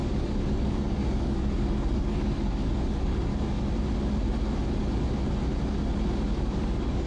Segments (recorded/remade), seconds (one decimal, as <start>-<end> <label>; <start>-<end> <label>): 0.0-3.3 remade; 3.3-6.3 recorded; 6.3-7.1 remade